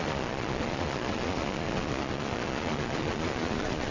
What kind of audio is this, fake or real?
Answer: fake